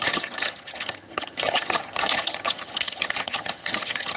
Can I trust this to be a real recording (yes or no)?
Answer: no